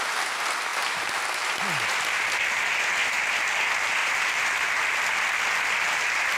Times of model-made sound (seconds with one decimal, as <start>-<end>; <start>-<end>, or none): 0.7-1.6; 4.0-4.5